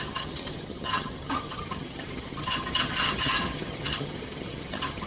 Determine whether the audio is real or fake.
fake